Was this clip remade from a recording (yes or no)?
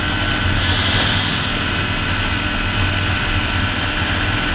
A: no